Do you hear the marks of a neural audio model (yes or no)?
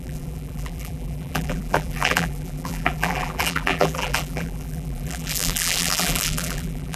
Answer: yes